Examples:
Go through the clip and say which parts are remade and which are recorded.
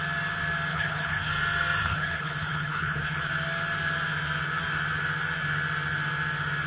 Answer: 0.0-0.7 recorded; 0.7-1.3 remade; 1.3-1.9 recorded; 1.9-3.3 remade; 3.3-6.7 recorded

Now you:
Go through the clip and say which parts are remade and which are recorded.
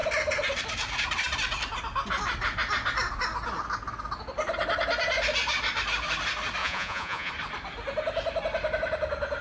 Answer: 0.0-6.6 recorded; 6.6-7.3 remade; 7.3-9.4 recorded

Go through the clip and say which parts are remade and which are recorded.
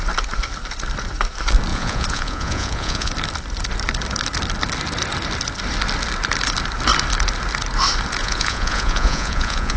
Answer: 0.0-1.7 recorded; 1.7-3.1 remade; 3.1-8.2 recorded; 8.2-9.8 remade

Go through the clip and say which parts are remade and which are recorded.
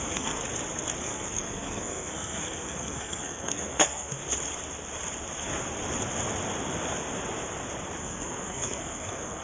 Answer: 0.0-0.4 remade; 0.4-1.0 recorded; 1.0-4.2 remade; 4.2-8.0 recorded; 8.0-9.4 remade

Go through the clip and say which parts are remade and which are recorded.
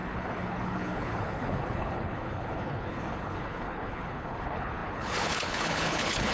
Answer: 0.0-6.3 remade